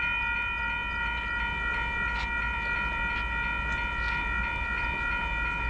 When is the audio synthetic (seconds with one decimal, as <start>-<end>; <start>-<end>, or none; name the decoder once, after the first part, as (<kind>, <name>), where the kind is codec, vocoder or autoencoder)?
none